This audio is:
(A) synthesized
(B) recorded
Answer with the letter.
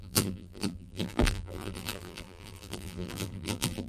A